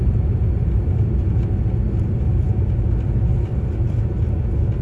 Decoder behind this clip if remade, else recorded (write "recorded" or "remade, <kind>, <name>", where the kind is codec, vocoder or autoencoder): recorded